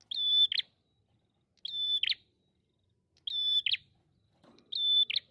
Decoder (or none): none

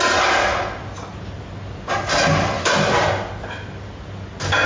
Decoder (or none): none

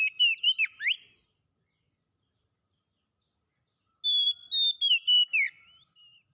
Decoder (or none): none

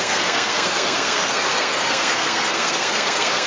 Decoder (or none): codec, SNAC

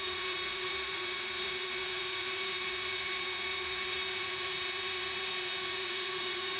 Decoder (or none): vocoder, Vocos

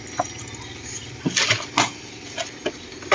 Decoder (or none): none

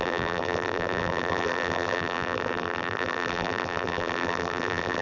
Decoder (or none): vocoder, BigVGAN v2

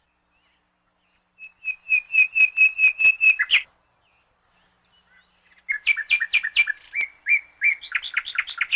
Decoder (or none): none